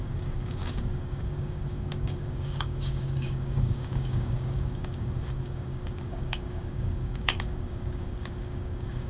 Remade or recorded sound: remade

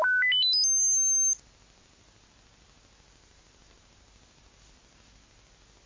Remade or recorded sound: recorded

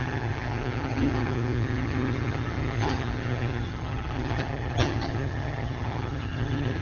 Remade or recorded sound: remade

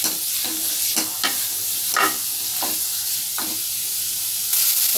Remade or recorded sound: recorded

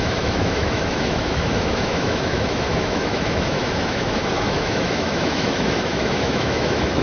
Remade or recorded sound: remade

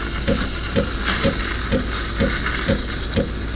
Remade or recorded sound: recorded